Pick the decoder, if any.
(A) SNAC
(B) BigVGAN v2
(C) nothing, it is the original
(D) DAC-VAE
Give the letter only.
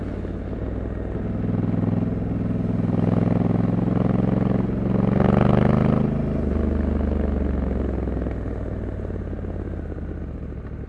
C